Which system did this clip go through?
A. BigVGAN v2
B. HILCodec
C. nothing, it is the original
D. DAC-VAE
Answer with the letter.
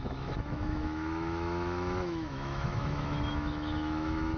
D